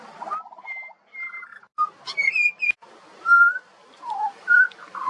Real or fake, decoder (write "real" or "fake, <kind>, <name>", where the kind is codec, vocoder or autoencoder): real